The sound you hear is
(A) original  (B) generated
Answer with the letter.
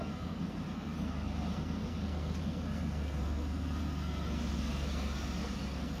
B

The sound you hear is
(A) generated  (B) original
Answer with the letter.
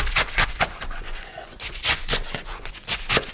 A